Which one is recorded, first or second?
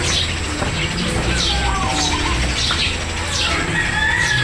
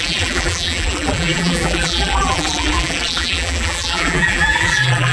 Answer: first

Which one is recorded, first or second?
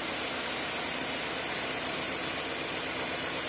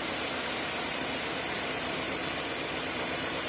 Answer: first